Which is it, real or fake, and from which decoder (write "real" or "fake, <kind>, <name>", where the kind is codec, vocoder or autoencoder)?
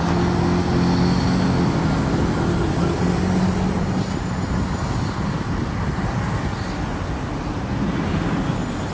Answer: real